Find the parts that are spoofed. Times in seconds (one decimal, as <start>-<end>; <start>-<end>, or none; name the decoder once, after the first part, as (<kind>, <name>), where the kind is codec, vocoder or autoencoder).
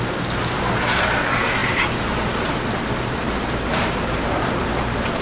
3.7-4.7 (vocoder, BigVGAN v2)